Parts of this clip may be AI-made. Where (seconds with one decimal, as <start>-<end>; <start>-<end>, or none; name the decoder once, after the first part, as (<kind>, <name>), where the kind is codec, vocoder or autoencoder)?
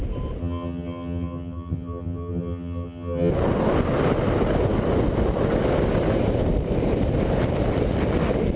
0.4-3.3 (vocoder, HiFi-GAN)